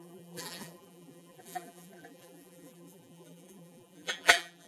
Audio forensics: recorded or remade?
remade